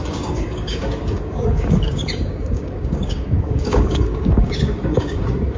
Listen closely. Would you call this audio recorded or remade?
remade